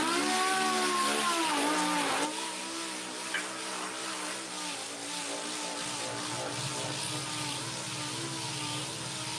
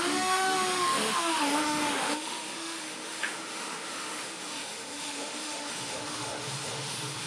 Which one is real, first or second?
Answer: first